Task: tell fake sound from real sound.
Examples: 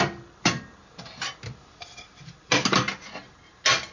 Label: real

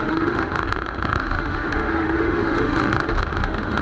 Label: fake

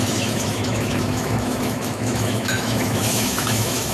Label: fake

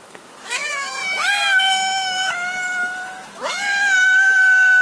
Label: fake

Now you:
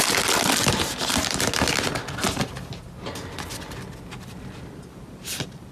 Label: real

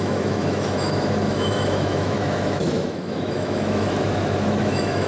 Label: fake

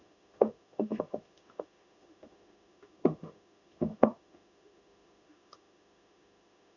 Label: fake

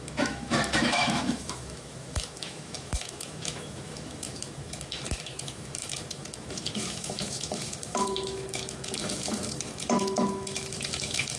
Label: fake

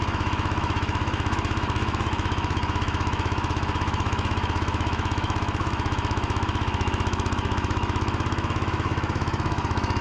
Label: fake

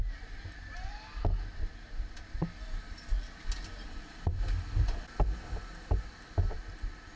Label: real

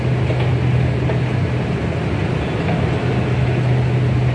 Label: real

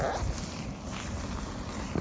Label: real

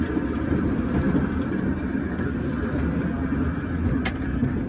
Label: real